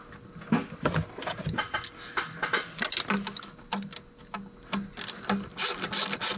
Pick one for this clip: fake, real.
real